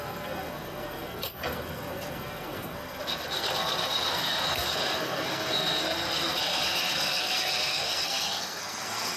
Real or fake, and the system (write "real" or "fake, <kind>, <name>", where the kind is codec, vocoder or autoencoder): fake, codec, SNAC